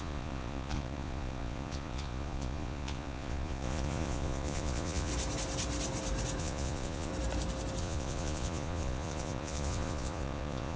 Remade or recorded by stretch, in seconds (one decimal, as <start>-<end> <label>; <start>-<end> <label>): 0.0-5.1 remade; 5.1-6.4 recorded; 6.4-7.1 remade; 7.1-7.8 recorded; 7.8-10.8 remade